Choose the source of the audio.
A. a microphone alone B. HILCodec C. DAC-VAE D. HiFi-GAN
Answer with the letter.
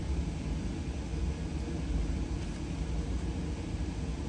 A